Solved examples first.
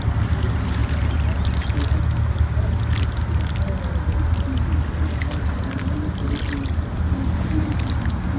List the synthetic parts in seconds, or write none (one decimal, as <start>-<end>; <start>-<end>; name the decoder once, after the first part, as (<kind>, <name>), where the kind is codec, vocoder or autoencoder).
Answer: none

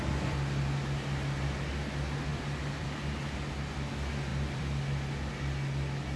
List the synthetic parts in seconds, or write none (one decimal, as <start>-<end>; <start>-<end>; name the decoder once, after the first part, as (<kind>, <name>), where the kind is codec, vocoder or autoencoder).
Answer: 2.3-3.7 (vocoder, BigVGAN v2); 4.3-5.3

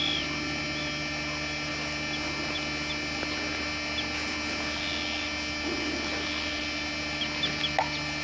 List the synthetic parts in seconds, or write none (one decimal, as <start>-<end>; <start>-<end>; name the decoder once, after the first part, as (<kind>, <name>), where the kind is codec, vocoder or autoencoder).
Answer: none

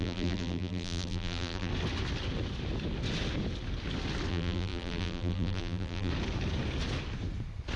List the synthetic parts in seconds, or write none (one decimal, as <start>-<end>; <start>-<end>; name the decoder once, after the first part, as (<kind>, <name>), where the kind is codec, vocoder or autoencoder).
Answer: 0.0-1.7 (vocoder, BigVGAN v2); 4.3-6.1

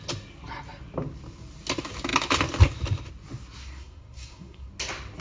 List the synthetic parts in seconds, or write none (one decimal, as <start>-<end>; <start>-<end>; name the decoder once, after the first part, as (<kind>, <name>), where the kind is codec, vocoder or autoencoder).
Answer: 3.6-4.7 (codec, SNAC)